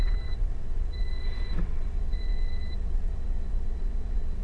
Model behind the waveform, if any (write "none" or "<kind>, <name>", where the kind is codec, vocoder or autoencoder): vocoder, WaveNeXt